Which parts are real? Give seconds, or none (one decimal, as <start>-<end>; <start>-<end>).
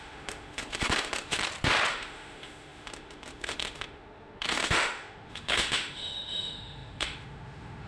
1.4-1.9